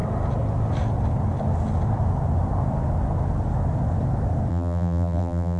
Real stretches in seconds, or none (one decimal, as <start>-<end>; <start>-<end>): 0.0-4.5